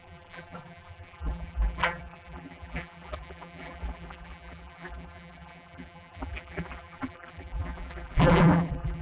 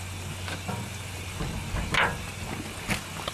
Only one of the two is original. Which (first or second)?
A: second